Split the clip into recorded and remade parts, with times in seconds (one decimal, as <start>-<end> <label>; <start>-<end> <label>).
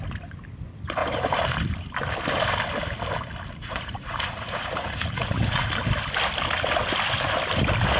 0.0-3.6 recorded; 3.6-5.7 remade; 5.7-8.0 recorded